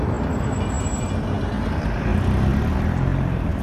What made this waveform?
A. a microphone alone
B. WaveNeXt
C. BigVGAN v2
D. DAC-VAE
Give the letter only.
A